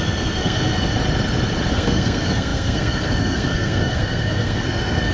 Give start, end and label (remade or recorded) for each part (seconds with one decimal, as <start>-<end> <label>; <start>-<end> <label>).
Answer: 0.0-0.9 remade; 0.9-1.7 recorded; 1.7-5.1 remade